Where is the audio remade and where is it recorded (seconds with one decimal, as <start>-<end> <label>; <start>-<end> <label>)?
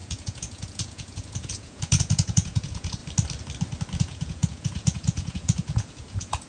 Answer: 0.0-3.0 remade; 3.0-4.0 recorded; 4.0-6.5 remade